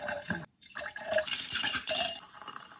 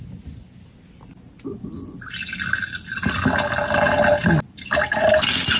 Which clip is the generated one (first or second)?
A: first